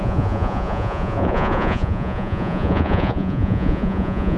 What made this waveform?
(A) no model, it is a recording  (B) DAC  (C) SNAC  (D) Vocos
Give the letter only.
D